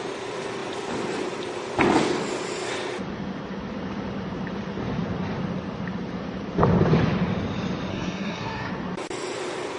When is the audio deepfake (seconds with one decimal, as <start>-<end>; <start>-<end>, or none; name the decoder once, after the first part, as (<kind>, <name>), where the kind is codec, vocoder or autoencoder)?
7.9-8.7 (codec, SNAC)